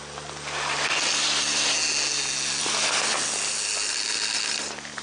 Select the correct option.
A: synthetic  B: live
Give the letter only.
B